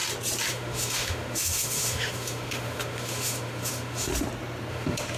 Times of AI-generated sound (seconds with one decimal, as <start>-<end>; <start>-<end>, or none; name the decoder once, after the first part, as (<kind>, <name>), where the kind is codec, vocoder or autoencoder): 0.5-4.1 (autoencoder, DAC-VAE); 4.7-5.2

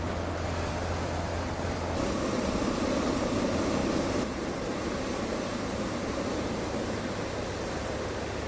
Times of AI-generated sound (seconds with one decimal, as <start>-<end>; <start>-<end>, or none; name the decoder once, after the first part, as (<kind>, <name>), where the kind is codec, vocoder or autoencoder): 3.8-6.9 (vocoder, BigVGAN v2)

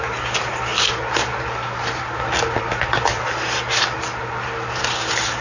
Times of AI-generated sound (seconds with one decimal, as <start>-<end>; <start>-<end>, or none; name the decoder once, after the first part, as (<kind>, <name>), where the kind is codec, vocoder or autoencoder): 0.7-2.6 (vocoder, BigVGAN v2); 3.1-5.4

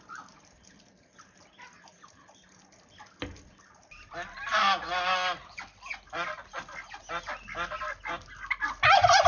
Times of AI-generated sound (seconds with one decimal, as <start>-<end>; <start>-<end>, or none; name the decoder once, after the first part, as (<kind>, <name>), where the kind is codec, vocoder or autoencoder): none

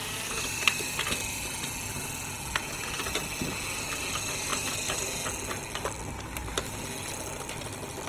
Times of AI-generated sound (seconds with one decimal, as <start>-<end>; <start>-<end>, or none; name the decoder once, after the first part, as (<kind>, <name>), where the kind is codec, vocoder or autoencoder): none

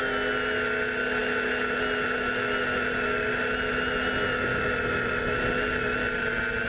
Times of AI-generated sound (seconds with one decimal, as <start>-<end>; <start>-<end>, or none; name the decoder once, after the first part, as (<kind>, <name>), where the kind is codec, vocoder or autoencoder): none

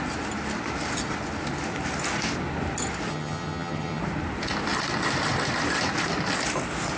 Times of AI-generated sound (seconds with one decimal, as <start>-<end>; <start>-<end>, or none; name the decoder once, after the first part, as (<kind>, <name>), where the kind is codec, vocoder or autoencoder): 3.1-4.0 (vocoder, HiFi-GAN)

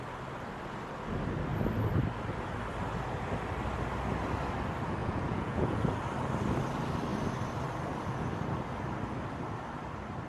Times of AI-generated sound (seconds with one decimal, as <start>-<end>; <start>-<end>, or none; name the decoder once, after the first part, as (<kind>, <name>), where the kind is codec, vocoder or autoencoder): 5.0-5.8 (vocoder, Vocos)